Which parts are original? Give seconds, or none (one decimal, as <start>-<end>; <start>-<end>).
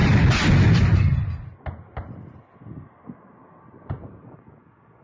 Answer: 0.0-5.0